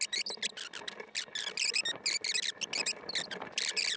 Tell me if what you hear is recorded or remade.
recorded